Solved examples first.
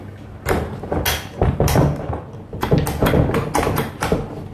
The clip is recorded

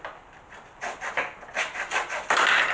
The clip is recorded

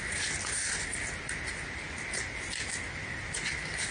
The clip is recorded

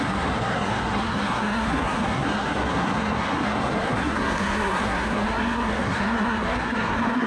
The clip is remade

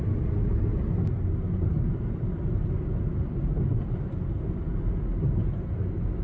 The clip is recorded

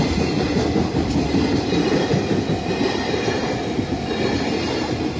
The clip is recorded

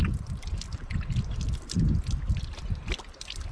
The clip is recorded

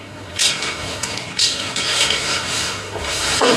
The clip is remade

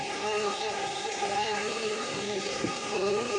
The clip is remade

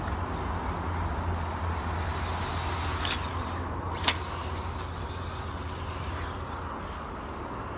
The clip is recorded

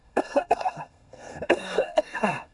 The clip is remade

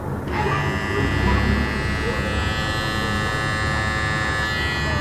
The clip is recorded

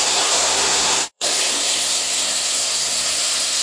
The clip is remade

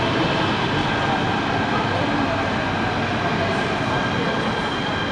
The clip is recorded